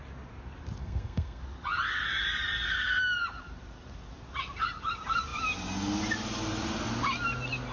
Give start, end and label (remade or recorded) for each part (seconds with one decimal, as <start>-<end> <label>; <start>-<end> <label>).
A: 0.0-0.8 recorded; 0.8-1.4 remade; 1.4-7.7 recorded